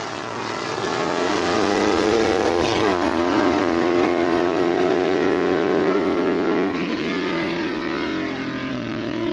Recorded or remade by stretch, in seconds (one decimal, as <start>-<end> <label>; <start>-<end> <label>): 0.0-8.1 remade; 8.1-8.7 recorded; 8.7-9.3 remade